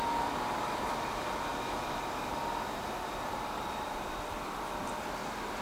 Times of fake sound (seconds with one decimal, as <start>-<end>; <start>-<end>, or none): none